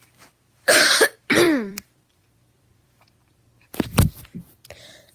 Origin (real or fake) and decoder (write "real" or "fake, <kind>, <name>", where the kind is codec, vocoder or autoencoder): fake, vocoder, BigVGAN v2